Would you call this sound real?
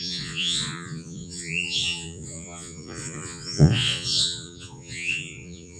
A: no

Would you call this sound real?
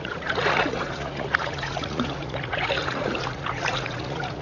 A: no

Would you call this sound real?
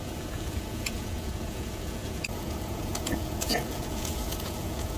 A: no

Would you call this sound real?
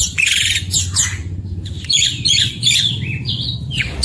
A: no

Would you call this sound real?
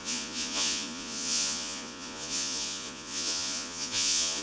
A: no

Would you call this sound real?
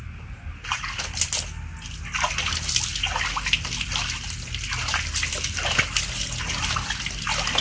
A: yes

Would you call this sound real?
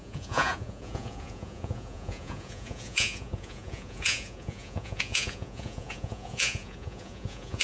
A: no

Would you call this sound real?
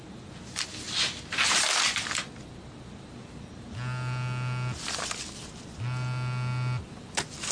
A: yes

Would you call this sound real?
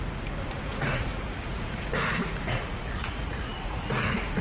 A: no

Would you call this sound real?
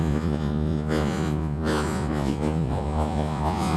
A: no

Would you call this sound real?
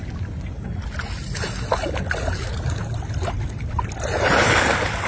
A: yes